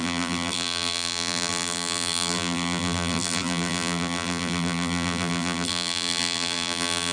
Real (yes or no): no